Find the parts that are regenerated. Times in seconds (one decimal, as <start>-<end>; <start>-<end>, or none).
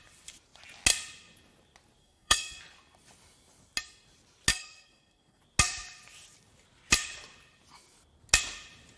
2.0-2.6; 4.5-5.4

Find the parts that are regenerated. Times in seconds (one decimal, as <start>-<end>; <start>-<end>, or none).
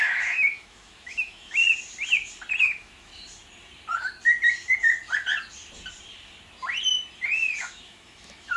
0.0-1.6; 2.6-3.1; 7.6-8.6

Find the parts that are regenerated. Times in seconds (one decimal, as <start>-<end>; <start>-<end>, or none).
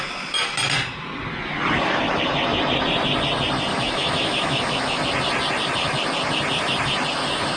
3.7-5.0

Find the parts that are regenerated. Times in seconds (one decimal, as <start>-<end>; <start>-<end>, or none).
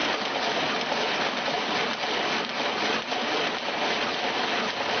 none